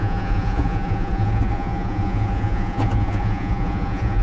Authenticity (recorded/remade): remade